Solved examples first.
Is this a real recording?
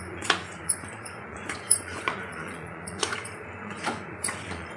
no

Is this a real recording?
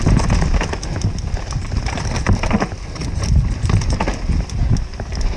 yes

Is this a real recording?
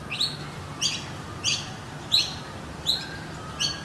yes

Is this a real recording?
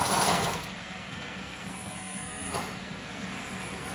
no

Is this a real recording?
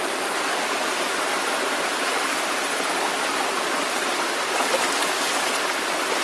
yes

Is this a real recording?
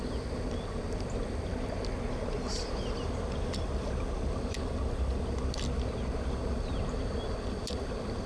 yes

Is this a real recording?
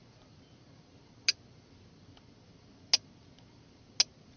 yes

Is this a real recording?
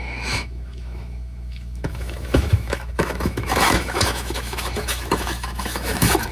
no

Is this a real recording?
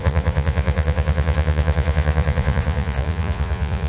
no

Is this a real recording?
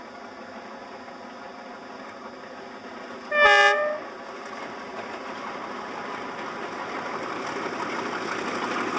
yes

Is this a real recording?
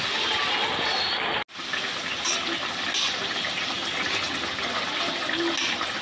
yes